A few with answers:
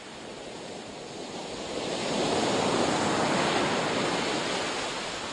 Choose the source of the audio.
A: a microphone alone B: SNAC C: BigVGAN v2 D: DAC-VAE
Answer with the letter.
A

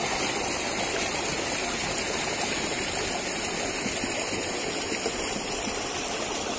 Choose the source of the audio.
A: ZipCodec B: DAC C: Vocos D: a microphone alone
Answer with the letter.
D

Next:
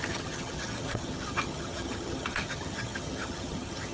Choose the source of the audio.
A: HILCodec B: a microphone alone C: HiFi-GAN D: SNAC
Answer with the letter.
C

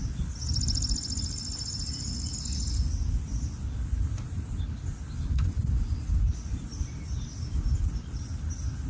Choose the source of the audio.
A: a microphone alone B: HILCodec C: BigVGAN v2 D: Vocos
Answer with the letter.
A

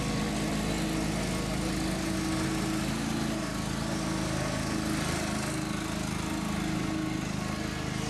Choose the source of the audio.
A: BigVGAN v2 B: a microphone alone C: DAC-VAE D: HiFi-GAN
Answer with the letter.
B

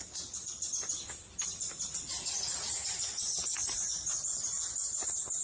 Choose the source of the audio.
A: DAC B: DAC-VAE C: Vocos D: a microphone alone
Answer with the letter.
D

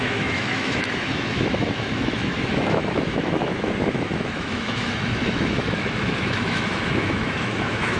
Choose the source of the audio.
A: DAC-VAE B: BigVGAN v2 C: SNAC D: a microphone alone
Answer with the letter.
A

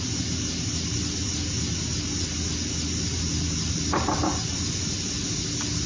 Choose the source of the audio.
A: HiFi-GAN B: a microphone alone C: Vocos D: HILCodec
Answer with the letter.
B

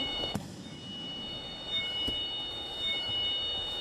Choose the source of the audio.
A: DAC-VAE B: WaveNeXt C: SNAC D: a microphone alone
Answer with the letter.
A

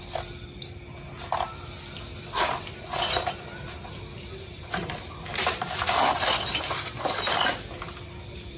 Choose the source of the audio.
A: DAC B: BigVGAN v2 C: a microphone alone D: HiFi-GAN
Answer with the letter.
C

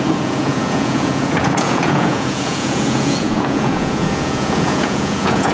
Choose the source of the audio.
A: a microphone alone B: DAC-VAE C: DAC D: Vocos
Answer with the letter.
D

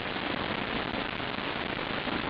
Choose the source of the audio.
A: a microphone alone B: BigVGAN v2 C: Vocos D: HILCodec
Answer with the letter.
A